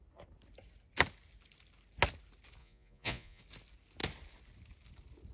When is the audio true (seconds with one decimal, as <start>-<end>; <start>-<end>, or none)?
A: 0.0-2.6; 3.4-5.3